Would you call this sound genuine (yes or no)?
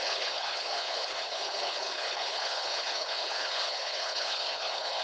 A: no